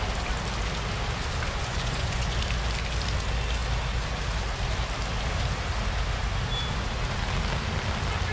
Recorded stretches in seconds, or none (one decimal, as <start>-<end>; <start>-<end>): 0.0-1.6; 2.4-8.3